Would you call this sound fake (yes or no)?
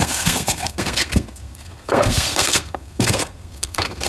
yes